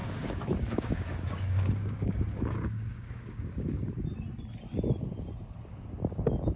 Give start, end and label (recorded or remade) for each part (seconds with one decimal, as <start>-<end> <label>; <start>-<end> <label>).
0.0-3.9 remade; 3.9-6.6 recorded